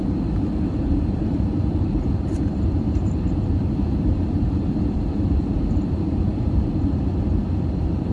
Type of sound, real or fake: fake